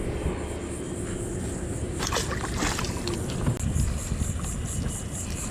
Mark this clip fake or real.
real